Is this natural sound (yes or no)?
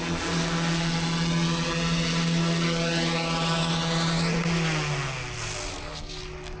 yes